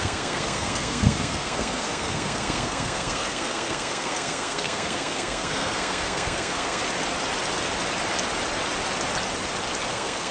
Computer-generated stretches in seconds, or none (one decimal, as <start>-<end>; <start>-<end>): 0.0-6.8; 9.9-10.3